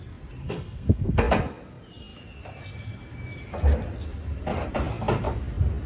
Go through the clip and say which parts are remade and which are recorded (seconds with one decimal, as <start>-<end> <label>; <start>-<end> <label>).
0.0-0.4 recorded; 0.4-1.2 remade; 1.2-5.9 recorded